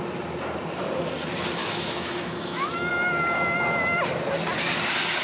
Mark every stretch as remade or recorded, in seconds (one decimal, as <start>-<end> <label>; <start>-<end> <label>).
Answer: 0.0-1.6 recorded; 1.6-2.9 remade; 2.9-5.2 recorded